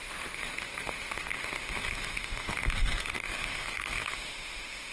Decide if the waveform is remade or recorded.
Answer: remade